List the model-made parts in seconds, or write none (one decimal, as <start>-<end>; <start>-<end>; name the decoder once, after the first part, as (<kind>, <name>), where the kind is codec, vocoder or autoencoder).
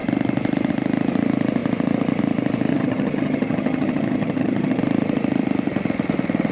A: 2.7-4.8 (vocoder, HiFi-GAN)